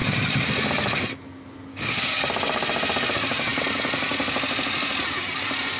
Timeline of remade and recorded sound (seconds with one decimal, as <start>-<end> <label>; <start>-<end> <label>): 0.0-1.7 recorded; 1.7-2.2 remade; 2.2-5.8 recorded